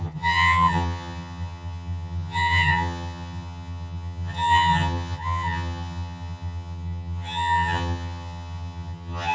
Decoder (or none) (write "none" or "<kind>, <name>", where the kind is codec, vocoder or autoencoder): vocoder, HiFi-GAN